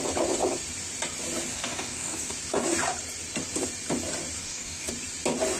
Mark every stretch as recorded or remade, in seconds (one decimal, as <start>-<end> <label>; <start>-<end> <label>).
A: 0.0-1.5 recorded; 1.5-2.3 remade; 2.3-4.4 recorded; 4.4-4.9 remade; 4.9-5.6 recorded